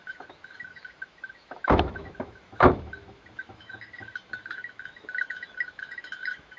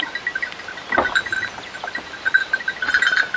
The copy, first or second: first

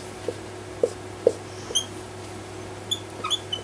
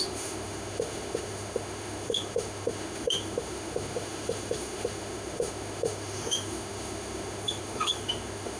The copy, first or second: second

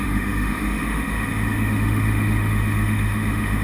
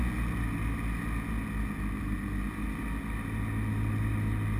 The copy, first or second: first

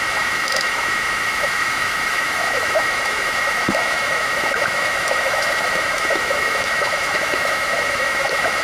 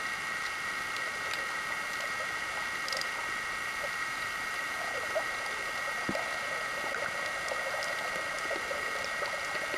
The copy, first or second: first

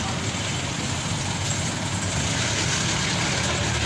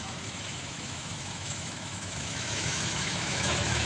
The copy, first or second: second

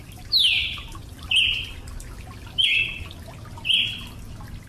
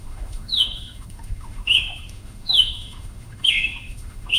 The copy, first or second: second